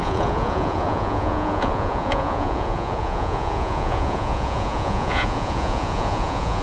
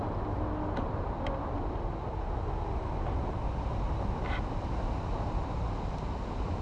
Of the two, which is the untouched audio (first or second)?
second